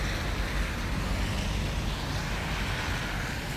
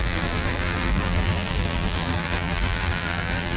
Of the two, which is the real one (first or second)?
first